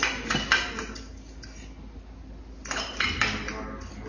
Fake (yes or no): no